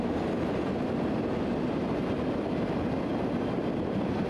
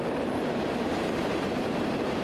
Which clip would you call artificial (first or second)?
second